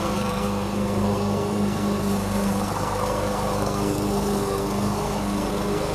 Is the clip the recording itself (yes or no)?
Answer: no